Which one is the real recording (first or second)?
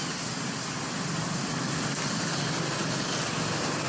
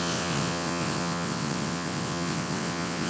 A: first